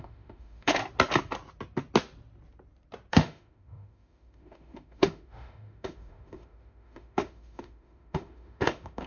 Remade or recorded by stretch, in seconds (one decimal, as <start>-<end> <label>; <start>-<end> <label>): 0.0-0.8 remade; 0.8-3.1 recorded; 3.1-9.1 remade